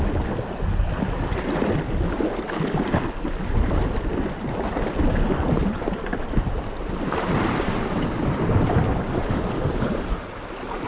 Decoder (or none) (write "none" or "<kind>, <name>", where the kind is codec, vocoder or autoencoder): none